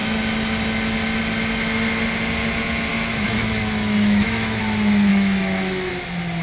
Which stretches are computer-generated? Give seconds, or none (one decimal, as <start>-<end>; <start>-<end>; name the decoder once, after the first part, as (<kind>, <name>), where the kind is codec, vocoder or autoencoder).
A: 2.9-4.6 (autoencoder, DAC-VAE); 5.1-5.9